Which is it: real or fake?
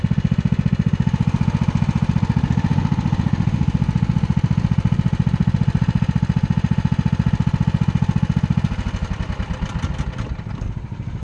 real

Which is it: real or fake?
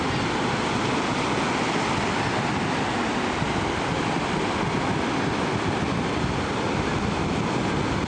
real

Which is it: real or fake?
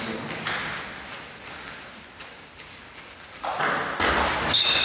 real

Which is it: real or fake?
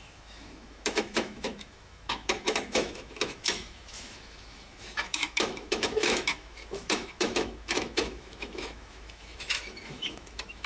fake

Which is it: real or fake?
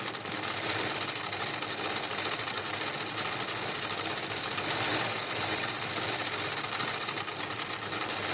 real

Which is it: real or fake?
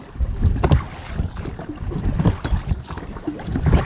fake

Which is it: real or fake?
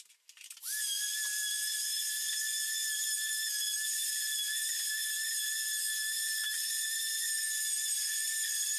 real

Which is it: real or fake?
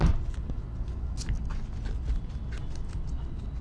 real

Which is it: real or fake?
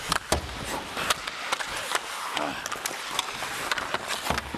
real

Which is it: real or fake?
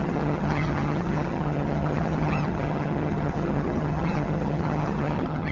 fake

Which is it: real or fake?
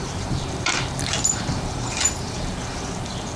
fake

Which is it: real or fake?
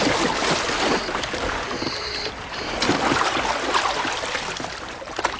real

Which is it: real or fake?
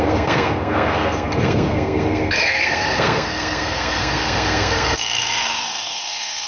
fake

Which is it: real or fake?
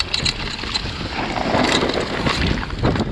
real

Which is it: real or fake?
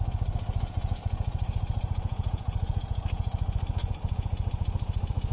fake